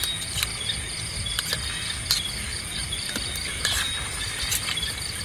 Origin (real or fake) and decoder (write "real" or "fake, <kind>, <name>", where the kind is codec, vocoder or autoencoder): real